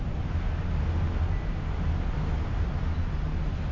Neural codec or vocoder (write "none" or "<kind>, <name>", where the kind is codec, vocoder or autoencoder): none